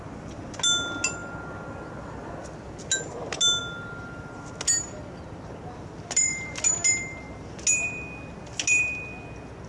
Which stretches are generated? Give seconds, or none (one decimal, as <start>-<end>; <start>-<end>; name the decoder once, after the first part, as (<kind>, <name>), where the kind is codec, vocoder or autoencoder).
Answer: none